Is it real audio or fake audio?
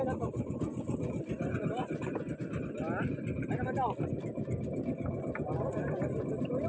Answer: real